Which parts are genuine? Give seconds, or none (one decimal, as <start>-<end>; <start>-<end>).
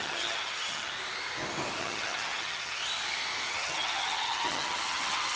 0.9-1.8; 2.8-3.5